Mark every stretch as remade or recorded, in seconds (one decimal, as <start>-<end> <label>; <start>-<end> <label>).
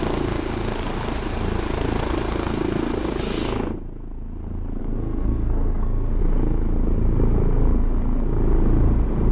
0.0-4.8 recorded; 4.8-6.2 remade; 6.2-9.3 recorded